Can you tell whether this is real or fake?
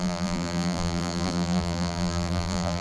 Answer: fake